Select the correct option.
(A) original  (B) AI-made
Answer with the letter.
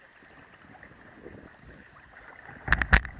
A